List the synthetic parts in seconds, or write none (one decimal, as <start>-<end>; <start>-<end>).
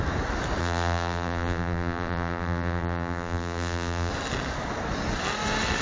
0.6-4.1